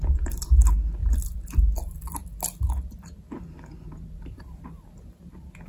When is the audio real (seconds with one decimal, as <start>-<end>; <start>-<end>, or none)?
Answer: 0.0-5.7